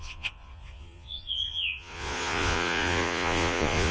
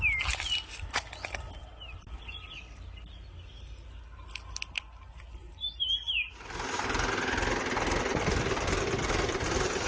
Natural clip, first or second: second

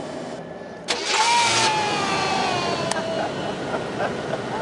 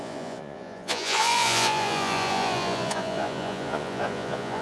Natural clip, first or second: first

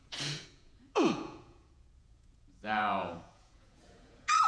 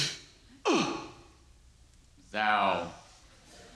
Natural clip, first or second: second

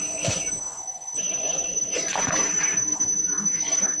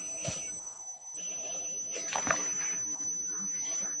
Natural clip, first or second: second